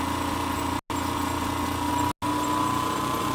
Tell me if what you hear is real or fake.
real